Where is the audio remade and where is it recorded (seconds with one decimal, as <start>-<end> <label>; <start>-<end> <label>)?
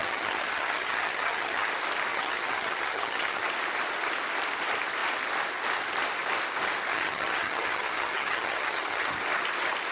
0.0-1.7 remade; 1.7-2.1 recorded; 2.1-3.4 remade; 3.4-6.9 recorded; 6.9-9.1 remade; 9.1-9.9 recorded